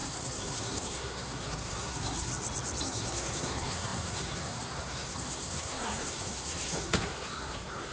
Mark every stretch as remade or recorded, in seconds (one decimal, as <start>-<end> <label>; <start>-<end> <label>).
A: 0.0-2.3 remade; 2.3-2.8 recorded; 2.8-7.9 remade